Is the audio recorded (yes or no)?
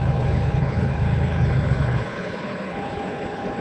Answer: no